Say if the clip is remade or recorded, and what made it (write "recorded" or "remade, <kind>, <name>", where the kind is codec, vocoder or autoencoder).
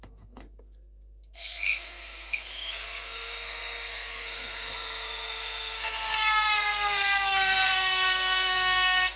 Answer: remade, codec, SNAC